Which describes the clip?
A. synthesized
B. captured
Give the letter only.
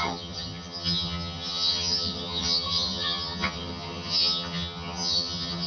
A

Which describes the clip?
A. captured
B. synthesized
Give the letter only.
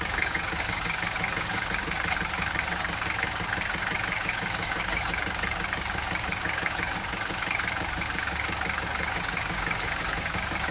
B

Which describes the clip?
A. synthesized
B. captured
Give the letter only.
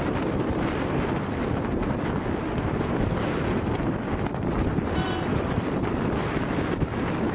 A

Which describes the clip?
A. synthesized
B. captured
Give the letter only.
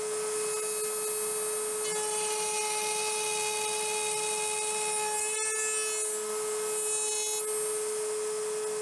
B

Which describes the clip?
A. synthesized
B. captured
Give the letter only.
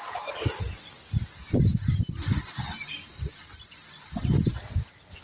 B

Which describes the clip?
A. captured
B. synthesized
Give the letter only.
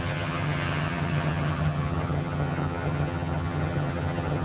B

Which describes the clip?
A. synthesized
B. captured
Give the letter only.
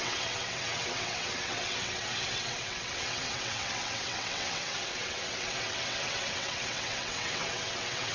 A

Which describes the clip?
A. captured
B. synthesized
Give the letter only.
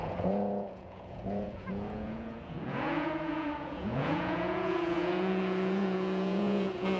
B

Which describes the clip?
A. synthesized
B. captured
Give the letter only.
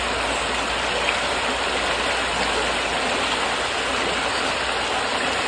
B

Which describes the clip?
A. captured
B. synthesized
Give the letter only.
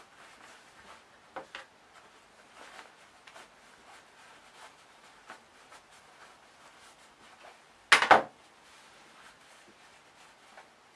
A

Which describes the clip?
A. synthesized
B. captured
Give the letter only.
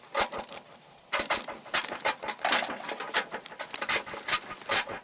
B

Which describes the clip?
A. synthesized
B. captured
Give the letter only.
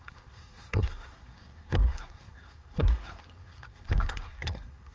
A